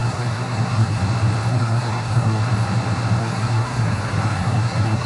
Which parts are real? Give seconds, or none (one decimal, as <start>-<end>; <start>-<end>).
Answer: 1.0-1.5; 2.4-3.2